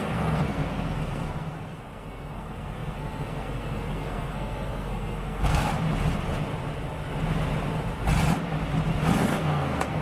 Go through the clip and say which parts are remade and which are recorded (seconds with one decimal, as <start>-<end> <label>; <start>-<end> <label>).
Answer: 0.0-5.7 remade; 5.7-9.2 recorded; 9.2-10.0 remade